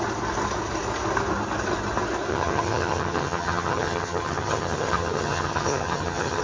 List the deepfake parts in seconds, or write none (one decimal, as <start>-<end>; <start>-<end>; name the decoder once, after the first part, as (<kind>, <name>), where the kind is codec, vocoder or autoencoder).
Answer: 2.3-6.4 (vocoder, HiFi-GAN)